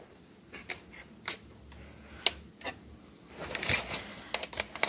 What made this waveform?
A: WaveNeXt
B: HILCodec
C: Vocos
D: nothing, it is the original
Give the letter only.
D